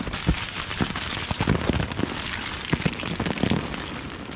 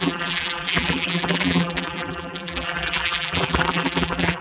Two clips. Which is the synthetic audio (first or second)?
second